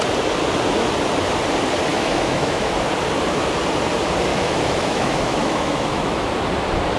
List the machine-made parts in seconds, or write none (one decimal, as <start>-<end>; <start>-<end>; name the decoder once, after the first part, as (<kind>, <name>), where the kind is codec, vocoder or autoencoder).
1.9-2.7 (autoencoder, DAC-VAE); 4.3-6.3